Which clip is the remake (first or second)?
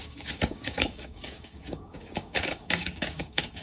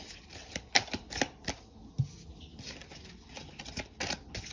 first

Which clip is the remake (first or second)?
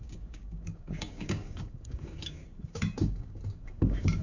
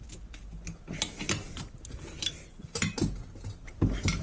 first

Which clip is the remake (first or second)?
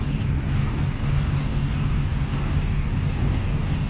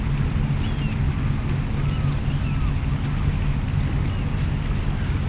first